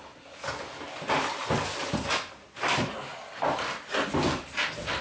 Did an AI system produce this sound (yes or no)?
no